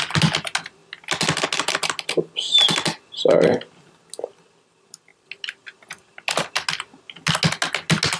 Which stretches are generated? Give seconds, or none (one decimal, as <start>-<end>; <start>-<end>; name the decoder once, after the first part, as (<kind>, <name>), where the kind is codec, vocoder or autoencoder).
none